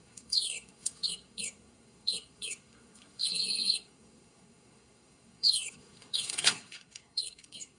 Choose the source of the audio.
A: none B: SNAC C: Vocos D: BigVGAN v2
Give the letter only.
B